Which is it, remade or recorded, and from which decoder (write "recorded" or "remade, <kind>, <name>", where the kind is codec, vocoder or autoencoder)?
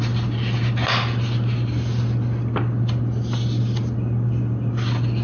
recorded